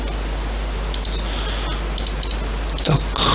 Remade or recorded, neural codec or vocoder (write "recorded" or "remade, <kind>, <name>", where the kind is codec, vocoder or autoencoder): recorded